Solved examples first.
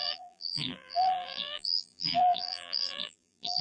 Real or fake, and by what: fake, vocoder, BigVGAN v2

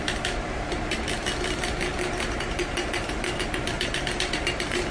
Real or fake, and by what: real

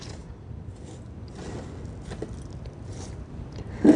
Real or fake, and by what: real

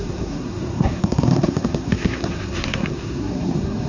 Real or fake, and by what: fake, codec, SNAC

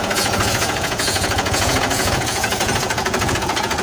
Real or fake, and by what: fake, vocoder, Vocos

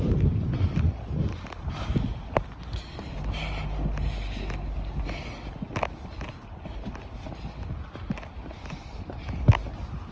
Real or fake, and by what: real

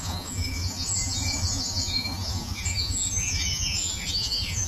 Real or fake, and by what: fake, vocoder, Vocos